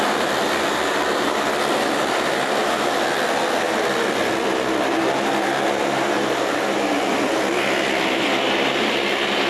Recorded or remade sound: recorded